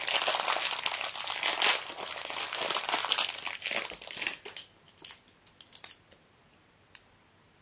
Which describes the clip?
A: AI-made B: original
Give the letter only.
B